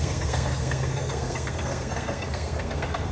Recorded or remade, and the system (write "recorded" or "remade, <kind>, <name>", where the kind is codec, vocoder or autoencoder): remade, codec, SNAC